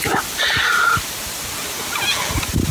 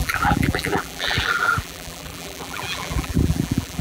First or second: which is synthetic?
second